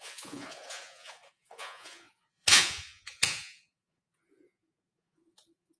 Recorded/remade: remade